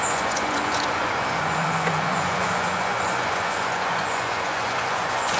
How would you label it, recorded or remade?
remade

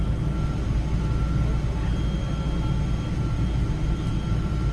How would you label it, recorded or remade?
recorded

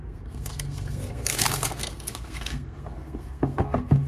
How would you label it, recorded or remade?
remade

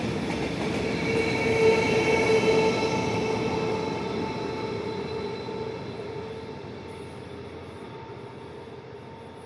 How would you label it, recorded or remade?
recorded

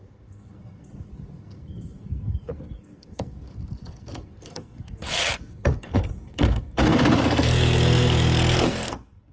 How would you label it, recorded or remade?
remade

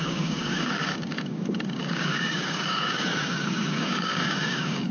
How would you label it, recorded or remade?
remade